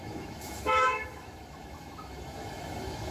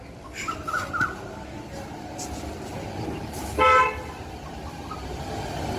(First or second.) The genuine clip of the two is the second